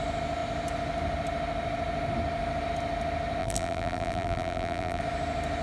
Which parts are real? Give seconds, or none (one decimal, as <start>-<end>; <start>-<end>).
0.0-3.4; 5.0-5.6